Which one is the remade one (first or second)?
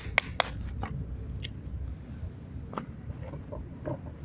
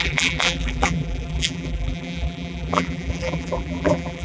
second